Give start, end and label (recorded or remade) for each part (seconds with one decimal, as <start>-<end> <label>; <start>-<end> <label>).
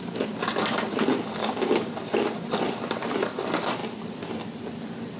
0.0-1.4 recorded; 1.4-1.9 remade; 1.9-5.2 recorded